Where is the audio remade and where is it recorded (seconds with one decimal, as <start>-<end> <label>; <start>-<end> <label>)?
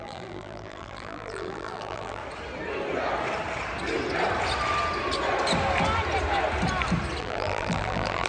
0.0-2.2 remade; 2.2-7.2 recorded; 7.2-8.3 remade